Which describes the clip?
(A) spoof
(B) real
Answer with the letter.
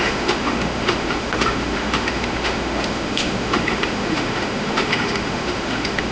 A